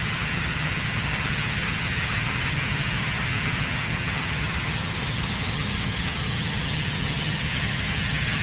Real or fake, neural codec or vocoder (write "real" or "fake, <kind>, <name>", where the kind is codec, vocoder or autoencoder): fake, vocoder, HiFi-GAN